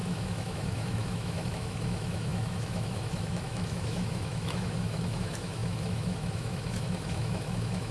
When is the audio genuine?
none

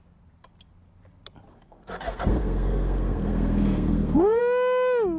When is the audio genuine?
0.0-1.5; 4.4-5.2

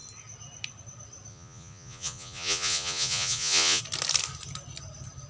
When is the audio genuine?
0.0-1.3; 3.8-5.3

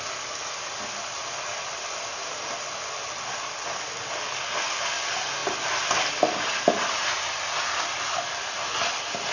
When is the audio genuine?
0.0-9.3

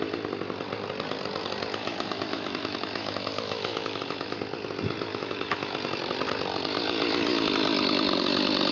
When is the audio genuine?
0.0-1.8; 4.4-5.1; 5.7-8.7